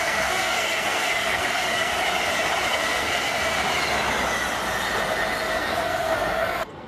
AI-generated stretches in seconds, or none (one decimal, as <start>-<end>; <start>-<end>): 0.0-1.9; 2.7-3.4; 5.5-6.9